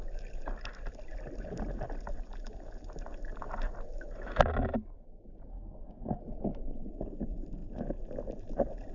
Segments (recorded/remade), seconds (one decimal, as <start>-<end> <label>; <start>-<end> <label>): 0.0-5.5 recorded; 5.5-6.2 remade; 6.2-8.9 recorded